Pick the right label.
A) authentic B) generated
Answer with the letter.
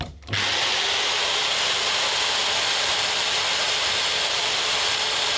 A